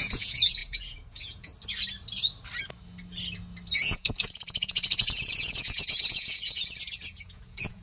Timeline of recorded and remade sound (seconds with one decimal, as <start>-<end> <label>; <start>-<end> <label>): 0.0-1.5 remade; 1.5-3.7 recorded; 3.7-7.8 remade